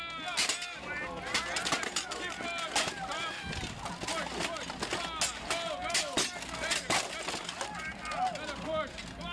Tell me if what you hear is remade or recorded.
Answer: recorded